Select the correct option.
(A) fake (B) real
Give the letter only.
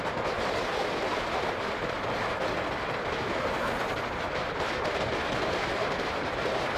B